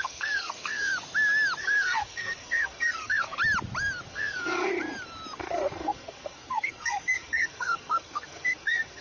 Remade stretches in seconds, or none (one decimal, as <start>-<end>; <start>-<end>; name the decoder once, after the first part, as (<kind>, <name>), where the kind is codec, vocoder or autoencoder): 0.0-0.9 (codec, SNAC); 1.6-3.4; 4.1-4.7; 5.4-9.0